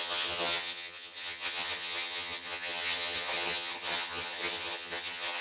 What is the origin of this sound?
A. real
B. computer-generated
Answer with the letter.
B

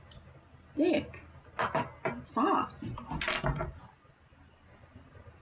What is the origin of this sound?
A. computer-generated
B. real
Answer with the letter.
B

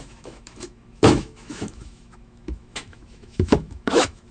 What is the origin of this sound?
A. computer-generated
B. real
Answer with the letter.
A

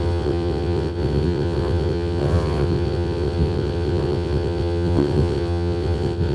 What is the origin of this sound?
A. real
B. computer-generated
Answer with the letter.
B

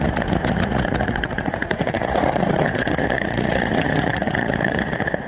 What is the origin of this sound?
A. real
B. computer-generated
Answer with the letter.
B